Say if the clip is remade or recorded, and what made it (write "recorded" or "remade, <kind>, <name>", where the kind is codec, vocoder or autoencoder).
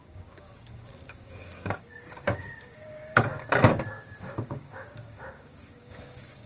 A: remade, codec, DAC